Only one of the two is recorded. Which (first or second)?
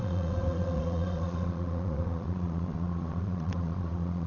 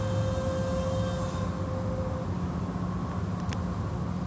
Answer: second